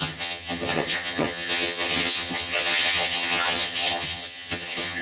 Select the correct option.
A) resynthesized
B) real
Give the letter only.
A